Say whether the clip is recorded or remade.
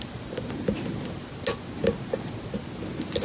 recorded